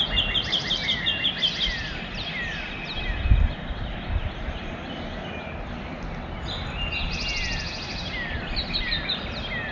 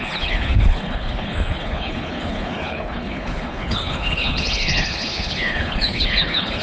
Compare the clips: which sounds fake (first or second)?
second